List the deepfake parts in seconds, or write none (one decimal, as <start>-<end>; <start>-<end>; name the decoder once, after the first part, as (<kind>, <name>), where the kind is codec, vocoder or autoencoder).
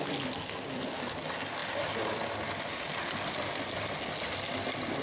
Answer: none